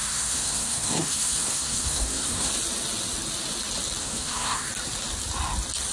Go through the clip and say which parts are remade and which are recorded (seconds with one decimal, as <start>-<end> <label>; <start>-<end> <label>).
0.0-2.5 remade; 2.5-4.0 recorded; 4.0-4.7 remade; 4.7-5.9 recorded